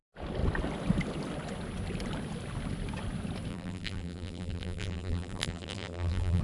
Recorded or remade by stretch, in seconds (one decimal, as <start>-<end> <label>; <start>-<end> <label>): 0.0-3.5 recorded; 3.5-6.4 remade